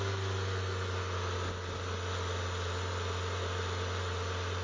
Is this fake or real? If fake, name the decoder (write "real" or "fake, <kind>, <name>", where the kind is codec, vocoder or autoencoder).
real